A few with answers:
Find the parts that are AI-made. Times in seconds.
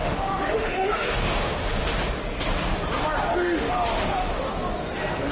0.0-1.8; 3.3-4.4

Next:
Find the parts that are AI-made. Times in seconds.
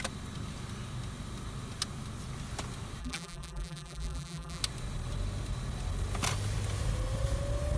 3.0-4.6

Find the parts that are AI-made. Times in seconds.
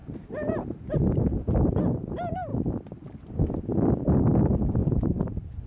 0.0-2.1; 4.8-5.7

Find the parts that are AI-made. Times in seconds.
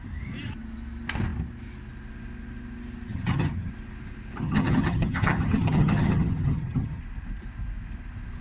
3.1-3.7; 4.4-7.0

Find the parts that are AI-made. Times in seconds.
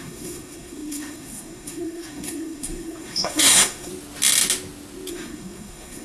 0.0-3.9; 5.1-6.0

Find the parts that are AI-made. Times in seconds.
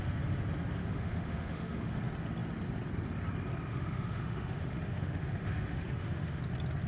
0.8-2.0; 3.7-6.4